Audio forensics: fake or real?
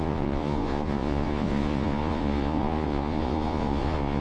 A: fake